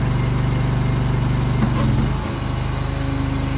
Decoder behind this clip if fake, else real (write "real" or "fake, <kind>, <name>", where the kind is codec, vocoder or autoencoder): real